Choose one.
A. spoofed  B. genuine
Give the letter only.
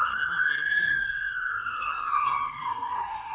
A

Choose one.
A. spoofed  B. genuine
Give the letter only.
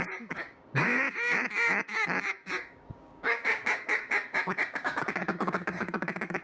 A